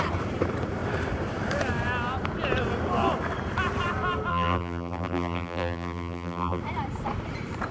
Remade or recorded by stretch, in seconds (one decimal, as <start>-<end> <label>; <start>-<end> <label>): 0.0-4.3 recorded; 4.3-6.6 remade; 6.6-7.7 recorded

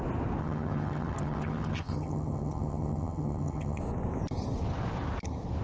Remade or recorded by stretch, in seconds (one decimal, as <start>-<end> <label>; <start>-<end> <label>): 0.0-0.4 recorded; 0.4-3.8 remade; 3.8-5.6 recorded

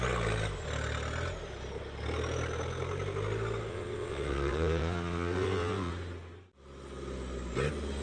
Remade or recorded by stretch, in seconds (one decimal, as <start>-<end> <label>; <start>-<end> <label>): 0.0-3.7 recorded; 3.7-5.9 remade; 5.9-8.0 recorded

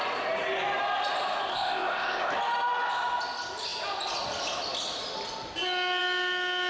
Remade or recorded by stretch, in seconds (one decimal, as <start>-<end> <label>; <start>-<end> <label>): 0.0-1.5 recorded; 1.5-2.3 remade; 2.3-6.7 recorded

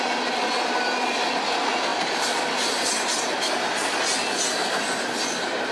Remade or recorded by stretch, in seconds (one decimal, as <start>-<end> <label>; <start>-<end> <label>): 0.0-1.9 recorded; 1.9-2.5 remade; 2.5-5.7 recorded